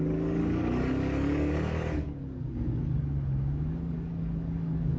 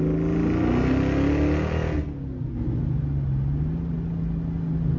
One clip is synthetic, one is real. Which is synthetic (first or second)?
first